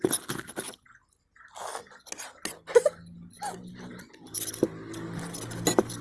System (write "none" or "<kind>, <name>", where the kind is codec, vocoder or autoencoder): none